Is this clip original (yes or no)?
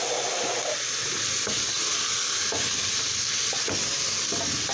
yes